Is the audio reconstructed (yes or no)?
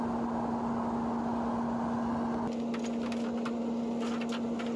no